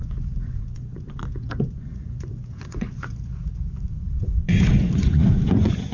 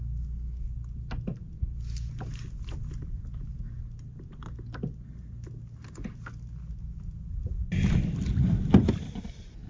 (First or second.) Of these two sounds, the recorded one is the second